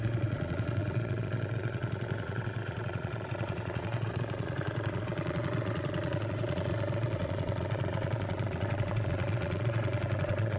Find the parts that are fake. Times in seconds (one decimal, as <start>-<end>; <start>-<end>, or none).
0.0-10.6

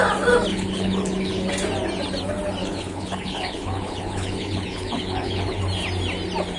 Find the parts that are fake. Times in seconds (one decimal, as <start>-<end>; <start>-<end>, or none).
0.5-1.5; 2.6-5.6

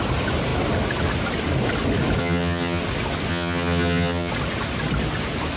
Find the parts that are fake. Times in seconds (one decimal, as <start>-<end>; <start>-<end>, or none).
2.2-2.8; 3.3-4.3